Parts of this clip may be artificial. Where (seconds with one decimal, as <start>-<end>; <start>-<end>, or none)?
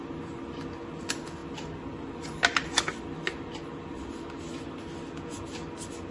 none